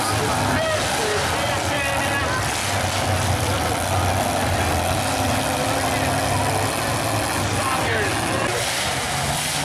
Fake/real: real